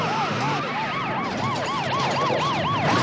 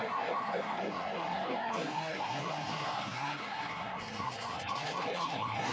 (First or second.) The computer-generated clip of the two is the second